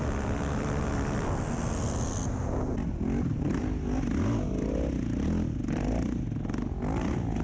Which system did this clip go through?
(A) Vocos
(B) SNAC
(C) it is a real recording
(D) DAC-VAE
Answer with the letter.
C